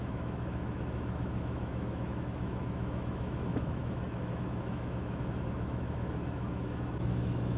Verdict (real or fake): fake